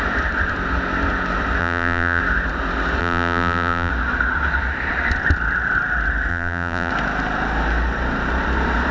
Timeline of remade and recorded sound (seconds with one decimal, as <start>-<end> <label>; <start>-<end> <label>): 0.0-1.6 recorded; 1.6-2.2 remade; 2.2-3.0 recorded; 3.0-3.9 remade; 3.9-6.3 recorded; 6.3-6.9 remade; 6.9-8.9 recorded